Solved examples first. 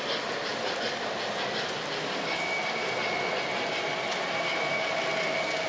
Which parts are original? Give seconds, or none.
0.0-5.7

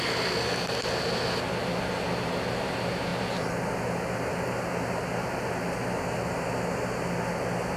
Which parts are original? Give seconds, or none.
0.0-7.8

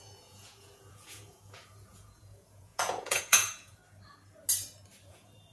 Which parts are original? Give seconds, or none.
3.8-5.1

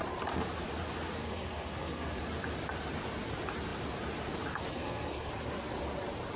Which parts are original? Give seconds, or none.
0.0-1.2; 2.2-4.7; 5.3-6.4

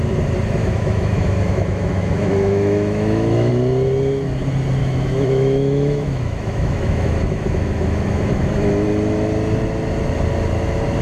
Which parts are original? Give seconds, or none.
0.0-0.6; 3.5-4.8; 8.7-11.0

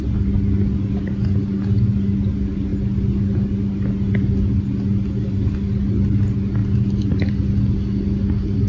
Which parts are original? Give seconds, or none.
0.0-8.7

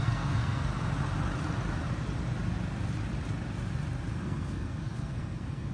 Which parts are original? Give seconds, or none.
0.7-4.1

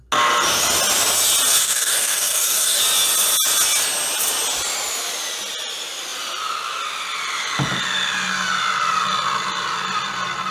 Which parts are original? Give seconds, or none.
0.0-1.6; 2.8-10.5